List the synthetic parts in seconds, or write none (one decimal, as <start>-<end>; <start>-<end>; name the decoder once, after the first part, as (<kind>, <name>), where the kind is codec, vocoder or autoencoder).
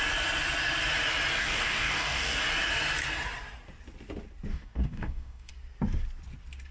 1.4-2.4 (codec, DAC); 4.5-5.5